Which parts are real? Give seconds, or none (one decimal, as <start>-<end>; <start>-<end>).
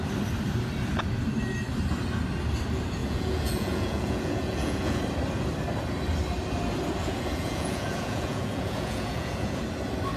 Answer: 0.0-3.0; 5.0-7.0; 9.6-10.2